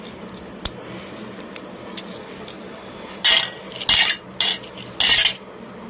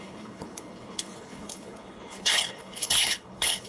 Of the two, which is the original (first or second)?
first